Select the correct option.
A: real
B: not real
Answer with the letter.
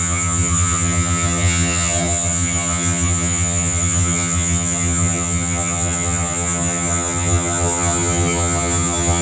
B